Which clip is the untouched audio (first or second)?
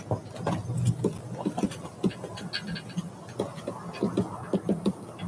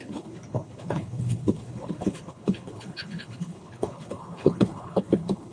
first